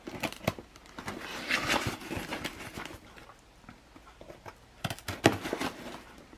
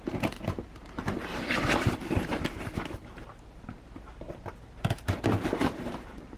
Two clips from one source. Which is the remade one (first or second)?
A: second